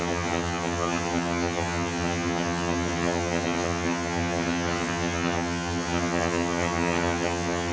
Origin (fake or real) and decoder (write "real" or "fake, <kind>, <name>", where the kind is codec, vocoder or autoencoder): fake, vocoder, HiFi-GAN